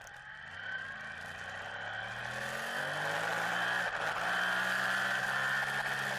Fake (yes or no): no